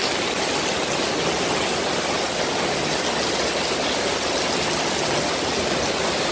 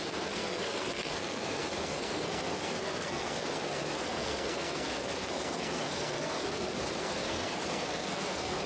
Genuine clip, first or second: first